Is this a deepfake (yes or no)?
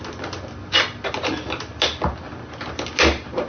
no